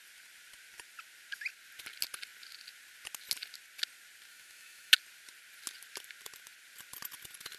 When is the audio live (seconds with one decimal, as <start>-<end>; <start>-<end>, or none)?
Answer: 0.0-4.3; 4.9-7.6